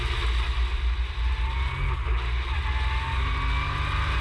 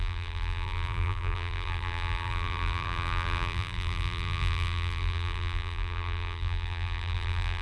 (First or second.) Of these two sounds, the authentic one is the first